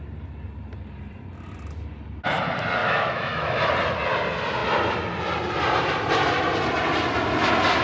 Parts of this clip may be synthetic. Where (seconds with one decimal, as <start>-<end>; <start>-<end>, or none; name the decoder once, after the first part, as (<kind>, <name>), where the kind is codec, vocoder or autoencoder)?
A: 2.8-3.6 (autoencoder, DAC-VAE)

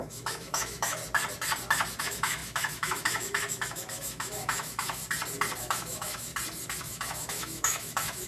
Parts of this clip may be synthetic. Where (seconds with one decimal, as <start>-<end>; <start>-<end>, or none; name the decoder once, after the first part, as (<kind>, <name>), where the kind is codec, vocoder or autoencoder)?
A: 0.0-1.0 (autoencoder, DAC-VAE); 2.0-5.0; 5.6-6.3; 6.8-8.3

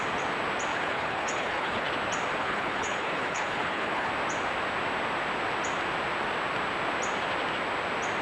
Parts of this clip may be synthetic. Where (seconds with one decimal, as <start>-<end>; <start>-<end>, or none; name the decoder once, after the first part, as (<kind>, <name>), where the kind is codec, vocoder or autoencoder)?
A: 0.7-1.9 (codec, HILCodec); 2.4-4.1

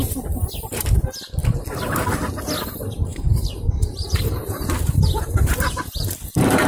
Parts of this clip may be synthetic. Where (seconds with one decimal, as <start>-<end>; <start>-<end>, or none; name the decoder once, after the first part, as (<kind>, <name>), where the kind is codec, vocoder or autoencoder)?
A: 3.1-6.7 (vocoder, BigVGAN v2)

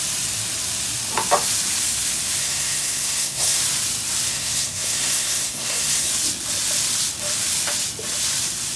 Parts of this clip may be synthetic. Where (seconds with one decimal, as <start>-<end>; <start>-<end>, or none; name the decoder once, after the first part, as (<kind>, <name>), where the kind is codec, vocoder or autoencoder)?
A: 2.4-3.6 (codec, SNAC); 4.3-6.1

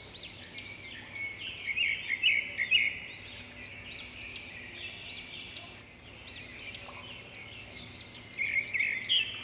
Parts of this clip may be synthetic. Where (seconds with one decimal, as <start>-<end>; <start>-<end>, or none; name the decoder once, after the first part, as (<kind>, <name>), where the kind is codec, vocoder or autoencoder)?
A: 7.4-8.0 (codec, DAC)

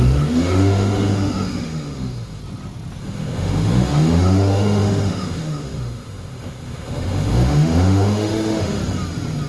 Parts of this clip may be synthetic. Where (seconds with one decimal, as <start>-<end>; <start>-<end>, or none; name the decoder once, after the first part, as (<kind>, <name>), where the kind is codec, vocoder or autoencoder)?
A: 0.0-2.4 (autoencoder, DAC-VAE); 3.0-8.8

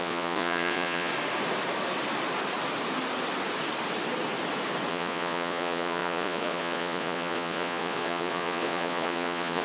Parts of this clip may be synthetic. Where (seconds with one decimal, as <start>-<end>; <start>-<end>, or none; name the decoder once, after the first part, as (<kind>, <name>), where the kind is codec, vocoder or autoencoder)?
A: 0.0-1.1 (vocoder, Vocos); 4.9-9.6